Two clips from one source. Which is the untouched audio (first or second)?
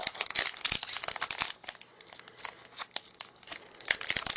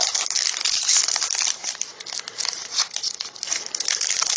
first